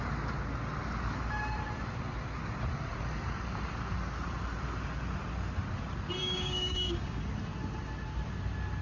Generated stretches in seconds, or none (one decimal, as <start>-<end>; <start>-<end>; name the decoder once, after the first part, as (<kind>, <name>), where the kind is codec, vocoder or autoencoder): 6.2-7.2 (codec, DAC)